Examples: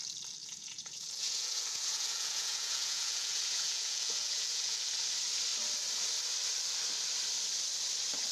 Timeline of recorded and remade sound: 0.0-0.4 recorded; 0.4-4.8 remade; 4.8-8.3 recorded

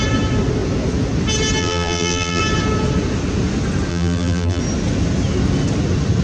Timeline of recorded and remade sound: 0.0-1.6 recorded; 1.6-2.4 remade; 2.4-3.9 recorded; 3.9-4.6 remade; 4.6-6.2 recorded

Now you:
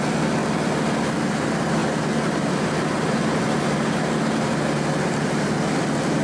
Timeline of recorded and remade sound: 0.0-6.2 recorded

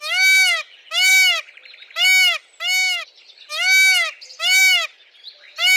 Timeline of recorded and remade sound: 0.0-5.8 recorded